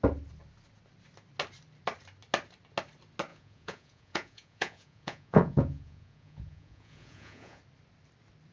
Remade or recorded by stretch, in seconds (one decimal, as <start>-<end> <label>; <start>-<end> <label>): 0.0-3.3 recorded; 3.3-7.6 remade; 7.6-8.5 recorded